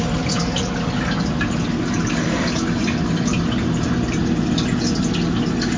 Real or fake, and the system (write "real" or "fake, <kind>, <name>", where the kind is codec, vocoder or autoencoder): real